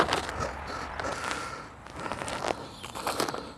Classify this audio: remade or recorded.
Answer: recorded